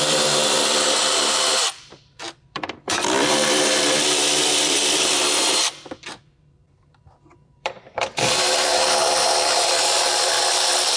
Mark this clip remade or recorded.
remade